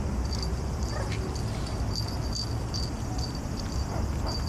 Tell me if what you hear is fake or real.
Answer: real